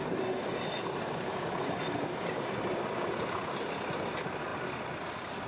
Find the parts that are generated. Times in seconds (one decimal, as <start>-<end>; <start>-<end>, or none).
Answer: none